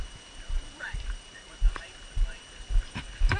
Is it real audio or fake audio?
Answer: fake